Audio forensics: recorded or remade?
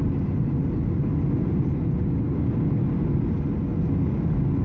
recorded